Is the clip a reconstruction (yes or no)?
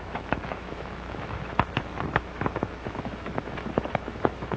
yes